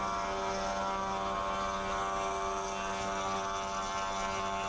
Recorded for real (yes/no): yes